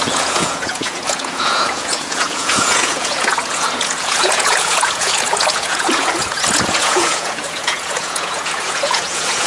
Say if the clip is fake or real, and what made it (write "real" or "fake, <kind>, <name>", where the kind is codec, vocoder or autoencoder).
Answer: fake, vocoder, Vocos